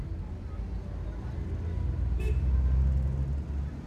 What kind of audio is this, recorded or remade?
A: recorded